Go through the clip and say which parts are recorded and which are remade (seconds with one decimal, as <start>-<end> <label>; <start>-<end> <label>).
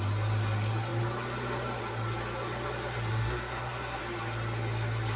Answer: 0.0-3.1 recorded; 3.1-4.0 remade; 4.0-5.2 recorded